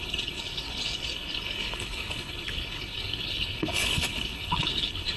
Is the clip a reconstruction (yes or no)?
yes